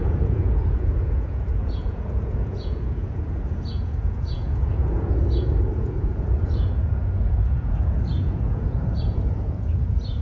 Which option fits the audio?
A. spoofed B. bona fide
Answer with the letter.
A